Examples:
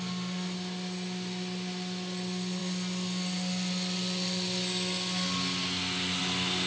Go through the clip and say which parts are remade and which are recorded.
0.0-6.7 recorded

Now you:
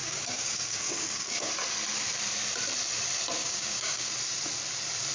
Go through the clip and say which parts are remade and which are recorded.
0.0-1.5 remade; 1.5-3.4 recorded; 3.4-4.1 remade; 4.1-5.1 recorded

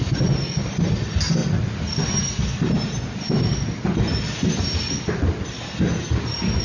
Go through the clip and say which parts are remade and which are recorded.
0.0-6.6 recorded